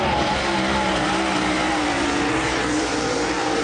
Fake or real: fake